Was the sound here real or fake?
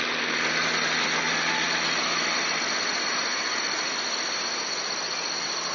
real